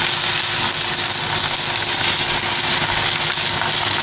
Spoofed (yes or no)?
no